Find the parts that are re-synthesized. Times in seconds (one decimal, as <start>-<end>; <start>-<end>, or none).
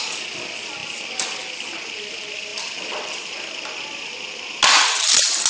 none